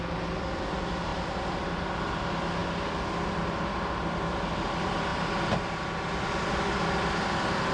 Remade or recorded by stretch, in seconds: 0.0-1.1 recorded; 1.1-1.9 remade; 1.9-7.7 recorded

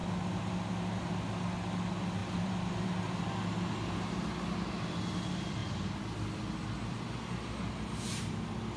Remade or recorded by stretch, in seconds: 0.0-2.2 recorded; 2.2-2.9 remade; 2.9-8.8 recorded

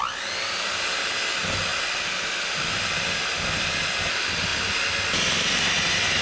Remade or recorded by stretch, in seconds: 0.0-1.7 recorded; 1.7-3.8 remade; 3.8-6.2 recorded